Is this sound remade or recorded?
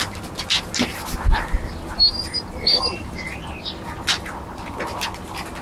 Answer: recorded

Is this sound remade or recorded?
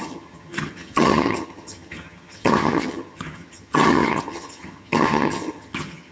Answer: remade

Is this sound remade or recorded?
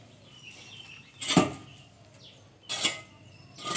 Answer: recorded